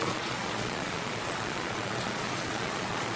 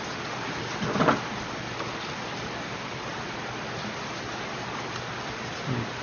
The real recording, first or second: second